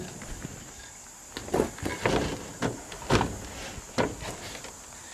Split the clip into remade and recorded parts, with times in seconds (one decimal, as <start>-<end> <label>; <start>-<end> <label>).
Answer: 0.0-5.1 recorded